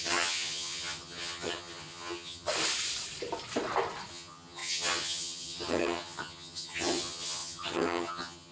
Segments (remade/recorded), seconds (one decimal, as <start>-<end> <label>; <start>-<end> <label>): 0.0-2.5 remade; 2.5-4.1 recorded; 4.1-8.5 remade